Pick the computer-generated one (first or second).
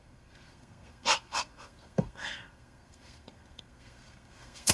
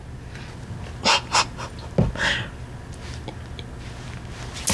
first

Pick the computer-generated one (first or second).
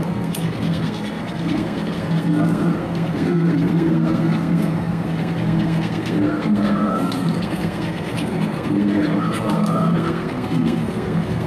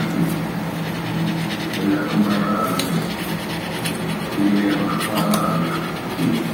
first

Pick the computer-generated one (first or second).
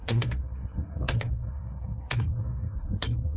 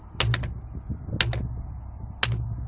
first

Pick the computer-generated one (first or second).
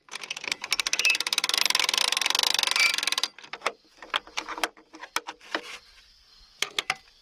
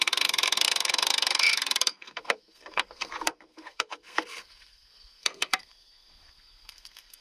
second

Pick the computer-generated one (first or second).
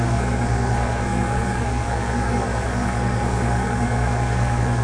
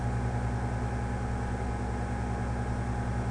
first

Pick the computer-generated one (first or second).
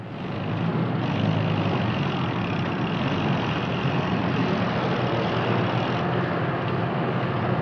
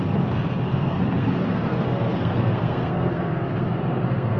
second